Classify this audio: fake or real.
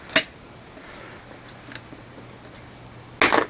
real